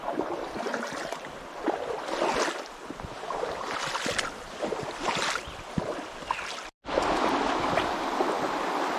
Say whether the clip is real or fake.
real